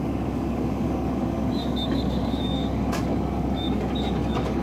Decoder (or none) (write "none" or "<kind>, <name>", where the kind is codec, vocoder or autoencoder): codec, DAC